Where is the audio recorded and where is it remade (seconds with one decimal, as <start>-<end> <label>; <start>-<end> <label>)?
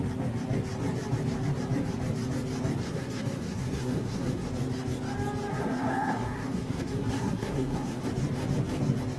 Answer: 0.0-2.8 recorded; 2.8-4.5 remade; 4.5-5.5 recorded; 5.5-8.0 remade; 8.0-9.2 recorded